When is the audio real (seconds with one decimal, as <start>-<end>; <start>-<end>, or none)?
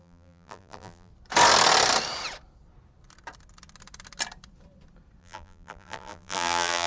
1.1-5.2